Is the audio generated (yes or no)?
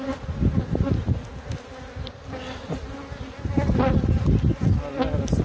no